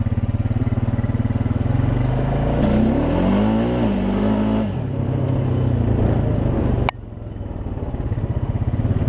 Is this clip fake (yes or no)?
no